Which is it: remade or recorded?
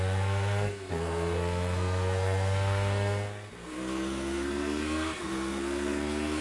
remade